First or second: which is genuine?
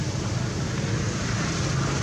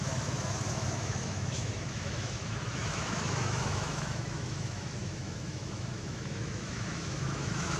first